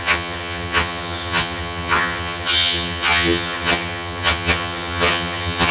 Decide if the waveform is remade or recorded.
remade